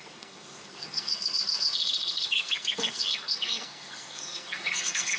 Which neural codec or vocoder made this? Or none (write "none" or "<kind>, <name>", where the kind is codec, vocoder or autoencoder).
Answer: codec, SNAC